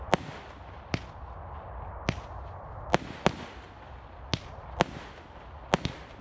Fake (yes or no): no